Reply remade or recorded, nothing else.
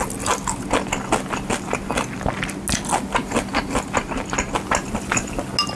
recorded